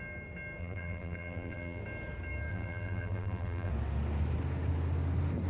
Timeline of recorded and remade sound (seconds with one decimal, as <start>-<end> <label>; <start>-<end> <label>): 0.0-0.6 recorded; 0.6-1.8 remade; 1.8-2.5 recorded; 2.5-3.7 remade; 3.7-5.5 recorded